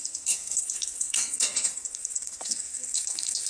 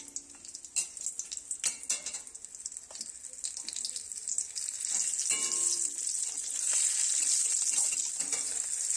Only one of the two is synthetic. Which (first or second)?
first